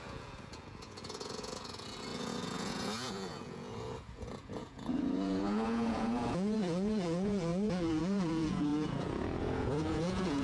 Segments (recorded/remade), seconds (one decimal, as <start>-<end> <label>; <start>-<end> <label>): 0.0-10.4 remade